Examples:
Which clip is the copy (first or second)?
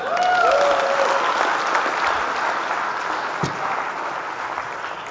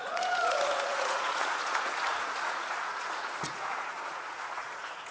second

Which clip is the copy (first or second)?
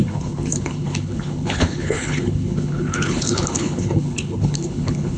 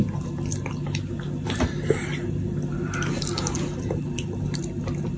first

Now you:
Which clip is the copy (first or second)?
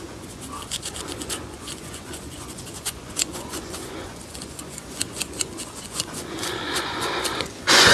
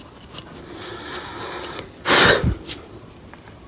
first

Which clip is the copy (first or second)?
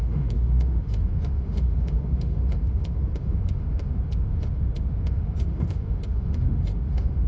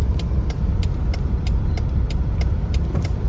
first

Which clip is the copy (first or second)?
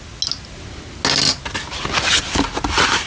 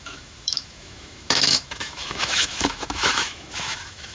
second